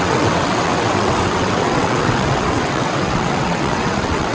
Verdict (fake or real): fake